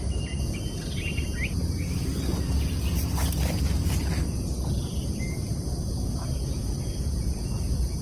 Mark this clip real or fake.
real